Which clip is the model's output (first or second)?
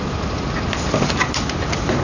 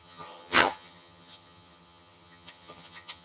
second